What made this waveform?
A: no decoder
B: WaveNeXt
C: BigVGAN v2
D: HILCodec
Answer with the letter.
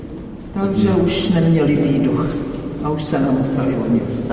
A